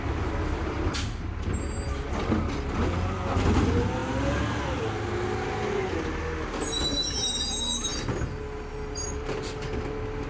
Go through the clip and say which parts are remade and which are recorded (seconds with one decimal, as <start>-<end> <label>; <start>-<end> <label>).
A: 0.0-10.3 recorded